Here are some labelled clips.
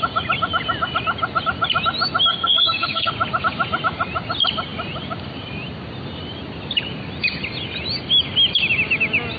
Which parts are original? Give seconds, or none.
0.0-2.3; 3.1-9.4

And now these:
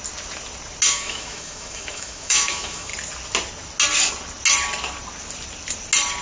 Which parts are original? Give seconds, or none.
0.0-0.9; 2.9-6.2